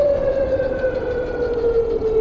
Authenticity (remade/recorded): remade